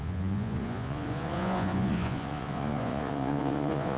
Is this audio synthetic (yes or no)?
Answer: yes